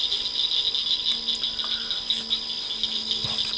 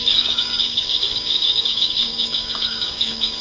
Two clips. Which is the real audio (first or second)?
first